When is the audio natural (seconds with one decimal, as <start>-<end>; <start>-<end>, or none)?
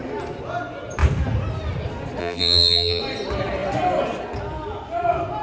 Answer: 0.0-2.2; 3.0-5.4